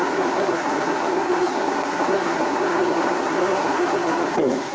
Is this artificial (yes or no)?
yes